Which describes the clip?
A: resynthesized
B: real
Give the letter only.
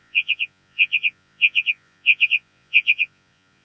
A